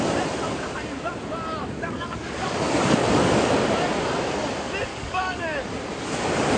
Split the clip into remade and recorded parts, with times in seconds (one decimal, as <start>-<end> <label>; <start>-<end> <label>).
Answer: 0.0-1.6 recorded; 1.6-3.5 remade; 3.5-4.9 recorded; 4.9-5.7 remade; 5.7-6.6 recorded

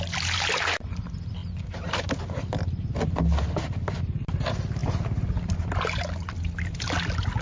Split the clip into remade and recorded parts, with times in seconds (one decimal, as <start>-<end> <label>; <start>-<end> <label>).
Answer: 0.0-7.4 recorded

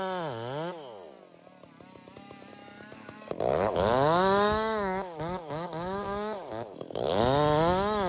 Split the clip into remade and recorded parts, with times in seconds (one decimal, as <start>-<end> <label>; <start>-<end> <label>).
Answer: 0.0-2.5 recorded; 2.5-7.2 remade; 7.2-8.1 recorded

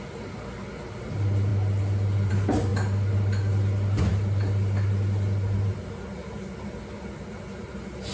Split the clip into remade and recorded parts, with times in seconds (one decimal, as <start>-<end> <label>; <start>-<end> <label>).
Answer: 0.0-8.1 recorded

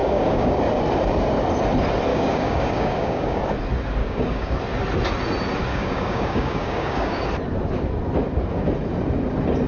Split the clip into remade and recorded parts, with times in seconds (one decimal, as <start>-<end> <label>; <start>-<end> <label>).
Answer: 0.0-0.6 remade; 0.6-2.1 recorded; 2.1-3.4 remade; 3.4-4.0 recorded; 4.0-4.6 remade; 4.6-5.7 recorded; 5.7-7.2 remade; 7.2-9.7 recorded

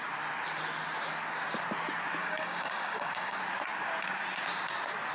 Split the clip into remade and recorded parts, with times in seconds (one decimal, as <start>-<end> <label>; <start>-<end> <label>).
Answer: 0.0-2.2 recorded; 2.2-3.4 remade; 3.4-5.1 recorded

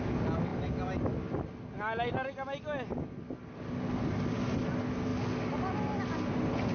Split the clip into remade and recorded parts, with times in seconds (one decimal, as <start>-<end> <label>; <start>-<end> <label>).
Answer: 0.0-6.7 recorded